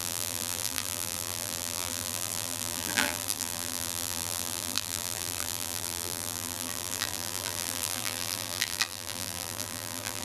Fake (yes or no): yes